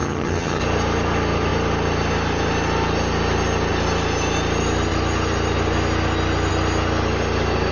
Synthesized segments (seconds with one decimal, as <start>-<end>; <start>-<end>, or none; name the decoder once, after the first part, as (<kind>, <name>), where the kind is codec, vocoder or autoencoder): 0.0-0.6 (vocoder, HiFi-GAN)